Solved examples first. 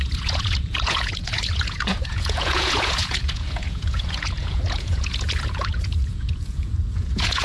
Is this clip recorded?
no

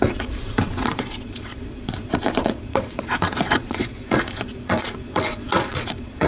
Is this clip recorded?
no